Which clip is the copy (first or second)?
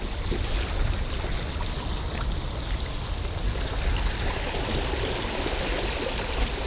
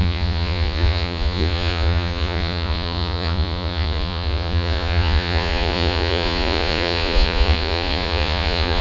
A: second